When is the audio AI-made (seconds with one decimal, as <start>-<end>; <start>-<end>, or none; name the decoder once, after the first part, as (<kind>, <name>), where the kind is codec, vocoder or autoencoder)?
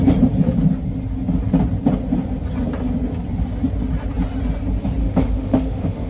5.0-6.1 (autoencoder, DAC-VAE)